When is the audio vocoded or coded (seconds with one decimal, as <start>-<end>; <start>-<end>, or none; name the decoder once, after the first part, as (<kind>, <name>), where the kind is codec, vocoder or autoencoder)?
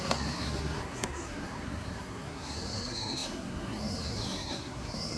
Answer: 0.0-5.2 (codec, SNAC)